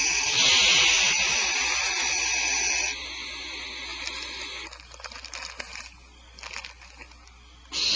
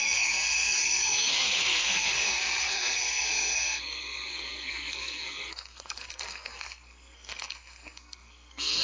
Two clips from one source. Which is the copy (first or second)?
second